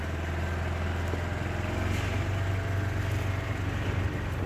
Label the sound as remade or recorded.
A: recorded